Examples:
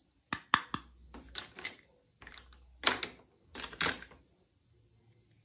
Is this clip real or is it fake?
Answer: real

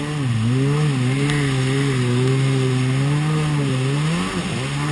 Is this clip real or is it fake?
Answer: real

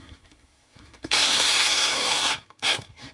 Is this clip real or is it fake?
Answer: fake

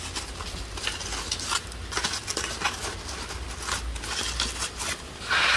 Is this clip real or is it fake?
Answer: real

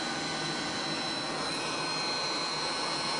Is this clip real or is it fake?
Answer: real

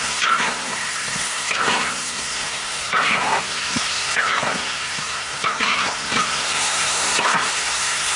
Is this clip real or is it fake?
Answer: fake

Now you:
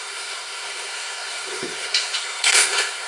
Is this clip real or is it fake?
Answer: fake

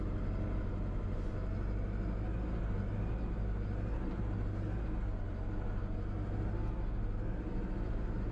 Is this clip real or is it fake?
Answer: real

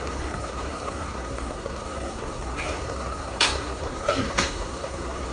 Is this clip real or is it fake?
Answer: fake